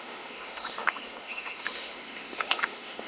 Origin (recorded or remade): remade